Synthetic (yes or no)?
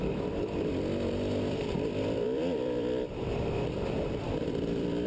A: yes